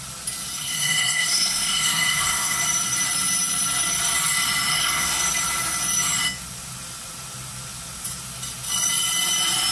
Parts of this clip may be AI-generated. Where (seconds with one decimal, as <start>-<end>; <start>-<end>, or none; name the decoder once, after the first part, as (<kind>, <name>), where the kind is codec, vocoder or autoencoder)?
0.5-2.6 (codec, SNAC); 4.7-5.2